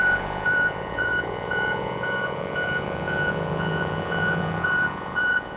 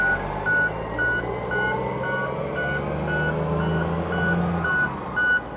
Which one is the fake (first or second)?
first